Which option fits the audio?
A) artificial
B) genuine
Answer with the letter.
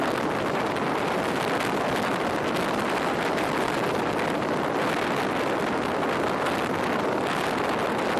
B